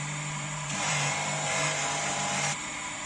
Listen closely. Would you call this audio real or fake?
fake